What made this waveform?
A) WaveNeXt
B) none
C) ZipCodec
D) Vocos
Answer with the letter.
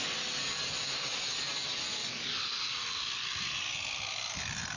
B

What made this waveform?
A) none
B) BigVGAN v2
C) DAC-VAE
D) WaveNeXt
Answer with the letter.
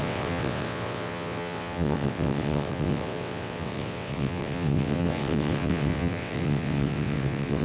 D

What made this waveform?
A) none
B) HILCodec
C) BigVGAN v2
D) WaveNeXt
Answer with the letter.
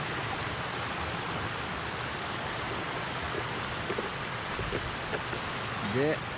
A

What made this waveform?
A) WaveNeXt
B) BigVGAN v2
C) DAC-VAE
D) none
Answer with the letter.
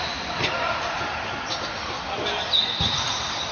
D